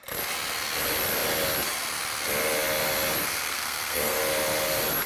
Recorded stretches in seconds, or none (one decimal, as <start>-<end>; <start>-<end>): 0.0-3.2; 4.2-5.1